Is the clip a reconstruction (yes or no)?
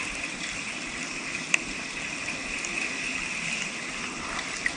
no